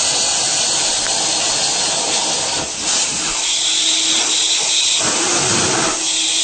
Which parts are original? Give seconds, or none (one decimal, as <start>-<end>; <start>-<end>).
0.0-6.4